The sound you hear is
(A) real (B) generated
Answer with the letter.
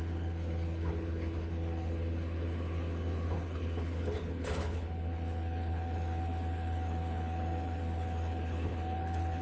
B